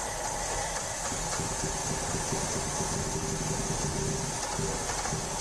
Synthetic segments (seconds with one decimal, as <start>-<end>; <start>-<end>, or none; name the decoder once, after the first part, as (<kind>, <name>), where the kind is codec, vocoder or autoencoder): none